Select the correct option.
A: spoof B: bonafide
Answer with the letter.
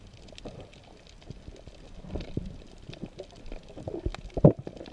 B